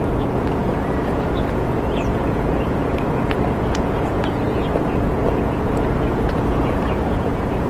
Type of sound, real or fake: fake